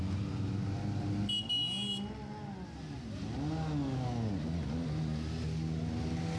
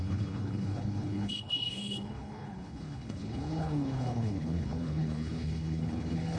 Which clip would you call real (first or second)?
first